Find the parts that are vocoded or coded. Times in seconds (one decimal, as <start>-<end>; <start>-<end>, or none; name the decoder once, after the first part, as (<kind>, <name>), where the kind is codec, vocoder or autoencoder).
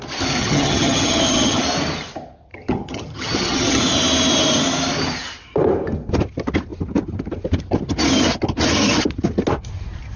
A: 0.4-1.6 (vocoder, HiFi-GAN); 2.5-3.8